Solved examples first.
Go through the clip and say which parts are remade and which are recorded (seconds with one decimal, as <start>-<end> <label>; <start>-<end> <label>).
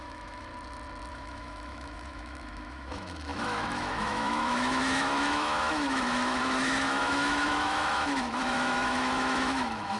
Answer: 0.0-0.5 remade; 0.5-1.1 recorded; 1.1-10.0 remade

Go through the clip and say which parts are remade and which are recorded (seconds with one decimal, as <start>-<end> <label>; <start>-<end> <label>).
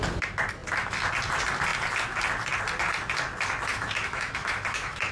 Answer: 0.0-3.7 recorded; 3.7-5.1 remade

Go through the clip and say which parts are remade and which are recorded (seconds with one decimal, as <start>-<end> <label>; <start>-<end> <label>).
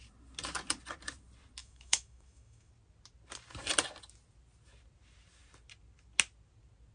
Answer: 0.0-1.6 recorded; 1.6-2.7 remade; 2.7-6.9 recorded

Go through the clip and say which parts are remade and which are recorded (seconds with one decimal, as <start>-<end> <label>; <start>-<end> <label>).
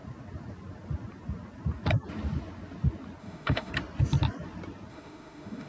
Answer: 0.0-3.2 recorded; 3.2-3.7 remade; 3.7-4.9 recorded; 4.9-5.7 remade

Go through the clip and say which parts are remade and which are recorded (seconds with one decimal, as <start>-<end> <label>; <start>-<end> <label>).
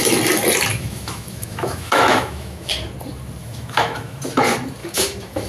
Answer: 0.0-0.7 recorded; 0.7-2.7 remade; 2.7-3.4 recorded; 3.4-4.2 remade; 4.2-4.8 recorded; 4.8-5.5 remade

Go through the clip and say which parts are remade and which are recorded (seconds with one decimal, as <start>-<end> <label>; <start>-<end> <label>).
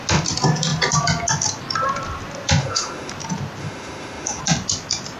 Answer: 0.0-2.6 recorded; 2.6-3.1 remade; 3.1-3.6 recorded; 3.6-4.4 remade; 4.4-5.2 recorded